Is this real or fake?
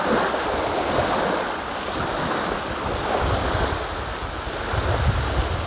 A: real